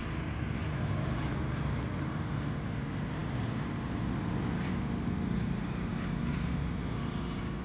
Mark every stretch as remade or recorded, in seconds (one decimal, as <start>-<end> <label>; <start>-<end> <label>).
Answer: 0.0-7.6 recorded